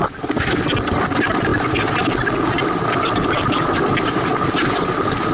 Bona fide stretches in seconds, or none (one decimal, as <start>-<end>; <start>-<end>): 0.0-5.3